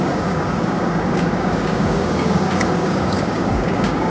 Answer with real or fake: fake